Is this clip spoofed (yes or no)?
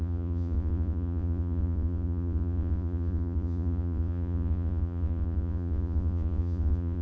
yes